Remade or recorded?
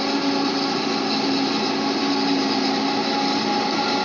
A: recorded